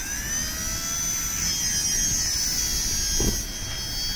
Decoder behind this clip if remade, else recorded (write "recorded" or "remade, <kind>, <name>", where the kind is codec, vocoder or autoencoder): recorded